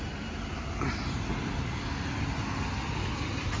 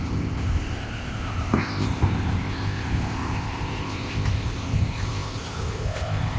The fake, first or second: second